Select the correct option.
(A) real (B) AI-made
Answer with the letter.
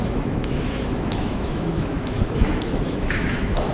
B